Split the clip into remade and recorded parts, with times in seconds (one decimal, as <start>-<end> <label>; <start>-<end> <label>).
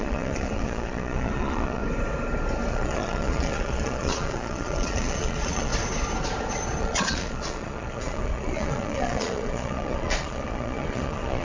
0.0-1.8 remade; 1.8-2.7 recorded; 2.7-5.7 remade; 5.7-6.8 recorded; 6.8-11.4 remade